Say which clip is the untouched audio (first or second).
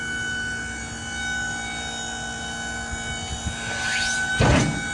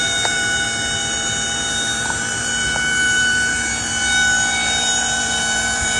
first